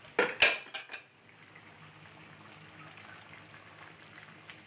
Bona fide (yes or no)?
yes